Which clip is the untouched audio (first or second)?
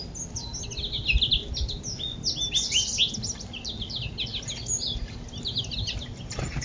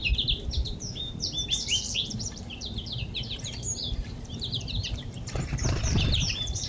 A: first